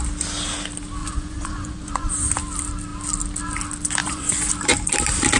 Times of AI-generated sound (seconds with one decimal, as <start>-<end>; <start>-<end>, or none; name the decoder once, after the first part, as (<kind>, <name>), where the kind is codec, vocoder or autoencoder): 1.0-2.1 (vocoder, Vocos); 4.0-4.5